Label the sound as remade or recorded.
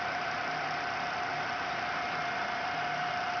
remade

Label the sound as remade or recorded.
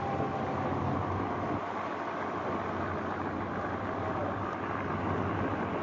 recorded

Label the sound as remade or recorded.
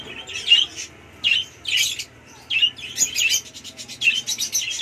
recorded